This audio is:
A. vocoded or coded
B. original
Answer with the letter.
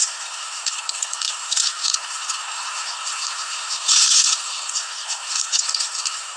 A